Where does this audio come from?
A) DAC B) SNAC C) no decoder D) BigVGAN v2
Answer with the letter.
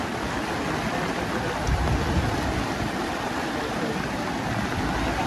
C